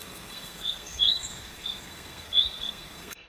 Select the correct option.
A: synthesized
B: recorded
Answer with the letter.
A